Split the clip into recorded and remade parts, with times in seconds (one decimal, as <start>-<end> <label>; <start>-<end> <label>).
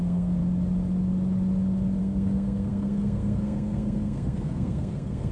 0.0-0.4 remade; 0.4-2.0 recorded; 2.0-5.3 remade